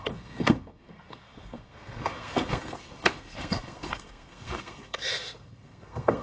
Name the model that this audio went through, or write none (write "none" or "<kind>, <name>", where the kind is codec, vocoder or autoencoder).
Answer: codec, SNAC